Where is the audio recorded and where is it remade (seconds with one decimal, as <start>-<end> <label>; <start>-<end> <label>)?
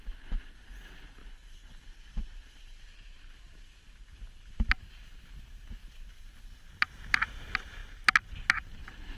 0.0-1.2 recorded; 1.2-2.9 remade; 2.9-5.8 recorded; 5.8-7.3 remade; 7.3-9.2 recorded